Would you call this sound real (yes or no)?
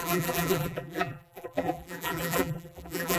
no